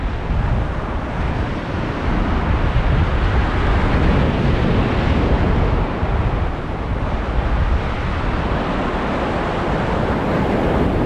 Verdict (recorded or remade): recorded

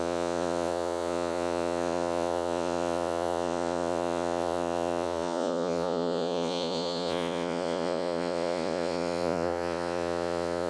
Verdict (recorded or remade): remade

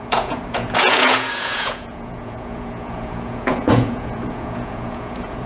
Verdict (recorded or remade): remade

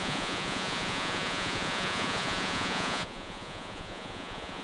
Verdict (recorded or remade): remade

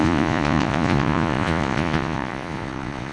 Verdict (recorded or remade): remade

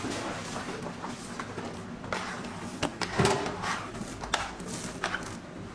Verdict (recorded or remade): recorded